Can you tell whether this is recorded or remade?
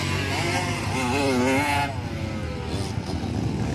recorded